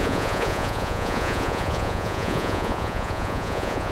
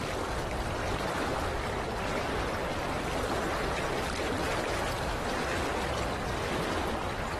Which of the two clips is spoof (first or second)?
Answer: first